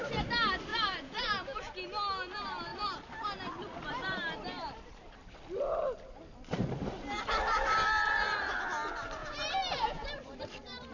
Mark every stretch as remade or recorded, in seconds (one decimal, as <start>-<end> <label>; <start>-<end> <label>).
0.0-0.7 recorded; 0.7-1.7 remade; 1.7-9.2 recorded; 9.2-10.1 remade; 10.1-10.9 recorded